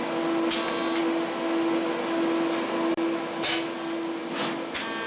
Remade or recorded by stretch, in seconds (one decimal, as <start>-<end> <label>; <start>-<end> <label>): 0.0-5.1 recorded